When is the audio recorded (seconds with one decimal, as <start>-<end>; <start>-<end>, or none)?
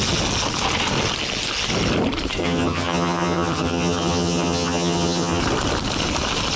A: 0.0-2.4; 5.4-6.6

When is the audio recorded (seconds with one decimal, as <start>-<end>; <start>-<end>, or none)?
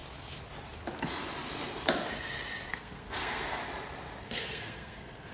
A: 0.0-2.7; 3.6-4.2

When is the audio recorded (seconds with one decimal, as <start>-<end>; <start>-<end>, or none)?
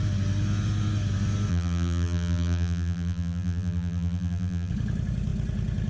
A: 0.0-1.5; 4.7-5.9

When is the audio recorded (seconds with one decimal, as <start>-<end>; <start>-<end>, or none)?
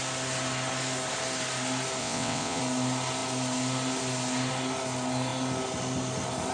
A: 0.0-2.0; 2.6-6.5